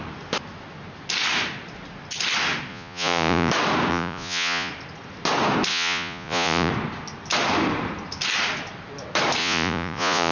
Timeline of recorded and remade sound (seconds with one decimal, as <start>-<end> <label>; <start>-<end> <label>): 0.0-2.7 recorded; 2.7-3.5 remade; 3.5-3.9 recorded; 3.9-4.7 remade; 4.7-5.7 recorded; 5.7-6.7 remade; 6.7-9.4 recorded; 9.4-10.3 remade